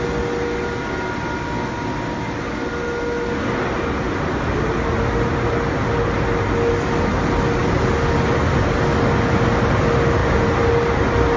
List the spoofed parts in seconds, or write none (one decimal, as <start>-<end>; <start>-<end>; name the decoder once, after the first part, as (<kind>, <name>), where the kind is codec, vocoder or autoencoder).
none